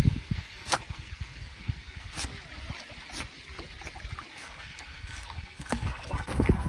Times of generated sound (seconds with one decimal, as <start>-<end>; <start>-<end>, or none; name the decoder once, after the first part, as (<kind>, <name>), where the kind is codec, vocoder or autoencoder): 0.0-2.3 (codec, SNAC); 4.3-6.7